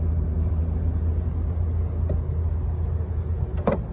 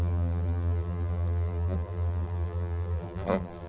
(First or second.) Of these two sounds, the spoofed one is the second